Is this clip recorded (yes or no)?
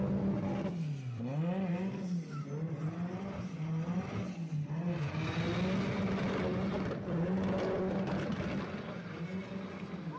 yes